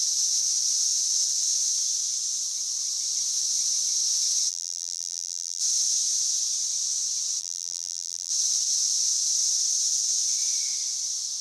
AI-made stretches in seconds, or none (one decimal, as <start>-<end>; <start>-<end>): 4.5-5.6; 7.4-8.3